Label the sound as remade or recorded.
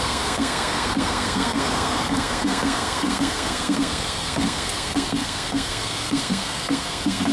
remade